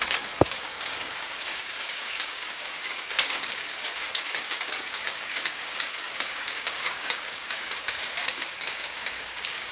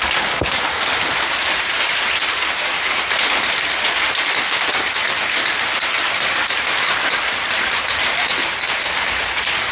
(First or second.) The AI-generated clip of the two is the first